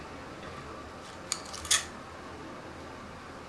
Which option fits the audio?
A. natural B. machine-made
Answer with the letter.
A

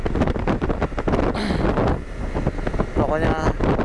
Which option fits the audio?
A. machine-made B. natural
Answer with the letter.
B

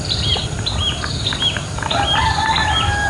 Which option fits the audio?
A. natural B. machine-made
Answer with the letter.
A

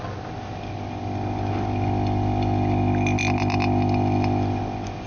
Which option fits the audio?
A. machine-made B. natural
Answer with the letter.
B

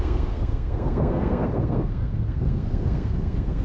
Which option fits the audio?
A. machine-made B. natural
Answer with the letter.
A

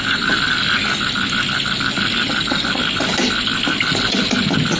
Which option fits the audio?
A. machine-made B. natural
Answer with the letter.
B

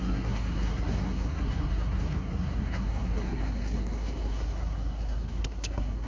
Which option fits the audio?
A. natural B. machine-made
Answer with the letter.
B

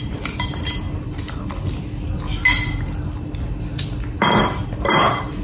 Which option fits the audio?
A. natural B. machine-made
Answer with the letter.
A